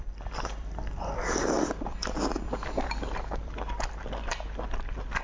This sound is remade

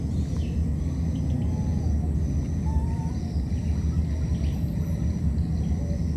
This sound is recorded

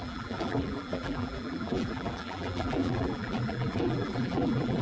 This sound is remade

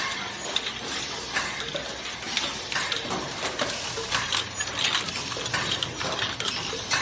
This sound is remade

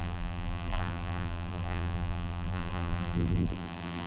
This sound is remade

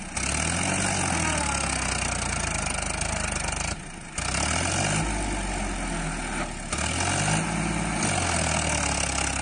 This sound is recorded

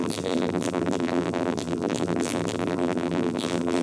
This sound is remade